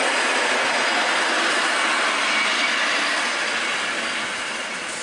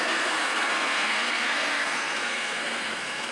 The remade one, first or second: second